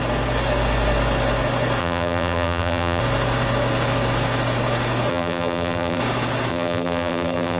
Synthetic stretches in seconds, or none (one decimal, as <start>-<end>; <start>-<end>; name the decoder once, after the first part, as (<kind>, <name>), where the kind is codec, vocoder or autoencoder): 1.8-3.0 (vocoder, BigVGAN v2); 5.1-6.0; 6.5-7.6